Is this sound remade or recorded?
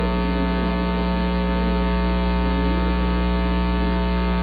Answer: recorded